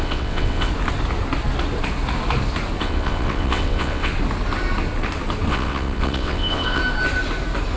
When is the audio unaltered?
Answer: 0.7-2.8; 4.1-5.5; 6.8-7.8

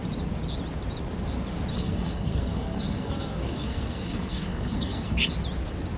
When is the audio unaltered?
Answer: 0.0-1.7; 5.3-6.0

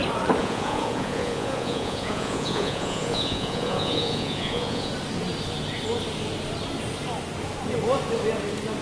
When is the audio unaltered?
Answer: 0.0-0.4; 4.9-8.8